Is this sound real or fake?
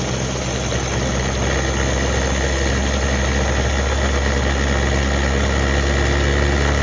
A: real